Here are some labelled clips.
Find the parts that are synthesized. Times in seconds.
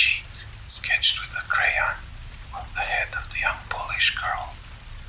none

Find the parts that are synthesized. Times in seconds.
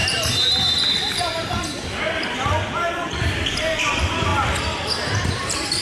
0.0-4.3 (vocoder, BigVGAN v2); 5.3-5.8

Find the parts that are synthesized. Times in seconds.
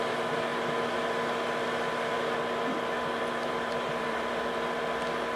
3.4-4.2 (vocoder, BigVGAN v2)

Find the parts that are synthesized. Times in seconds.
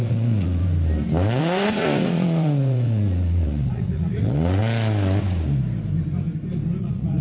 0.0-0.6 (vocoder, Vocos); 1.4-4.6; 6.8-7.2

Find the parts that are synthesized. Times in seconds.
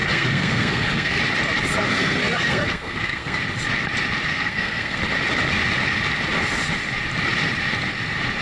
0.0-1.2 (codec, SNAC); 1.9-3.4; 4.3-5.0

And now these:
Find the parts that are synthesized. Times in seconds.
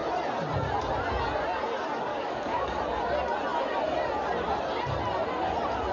2.1-2.8 (codec, DAC)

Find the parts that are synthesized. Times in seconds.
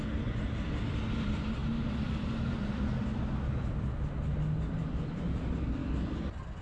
none